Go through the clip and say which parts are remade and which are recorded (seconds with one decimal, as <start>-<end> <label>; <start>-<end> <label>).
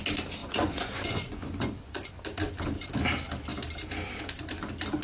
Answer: 0.0-0.4 recorded; 0.4-2.1 remade; 2.1-5.0 recorded